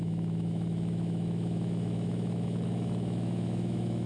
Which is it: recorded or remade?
remade